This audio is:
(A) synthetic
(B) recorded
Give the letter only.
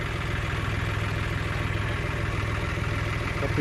B